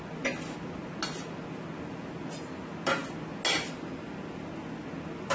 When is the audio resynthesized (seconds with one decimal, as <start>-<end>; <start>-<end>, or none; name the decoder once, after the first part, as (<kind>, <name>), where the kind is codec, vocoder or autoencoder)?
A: none